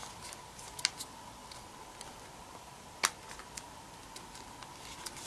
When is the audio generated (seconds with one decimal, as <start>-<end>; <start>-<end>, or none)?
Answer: none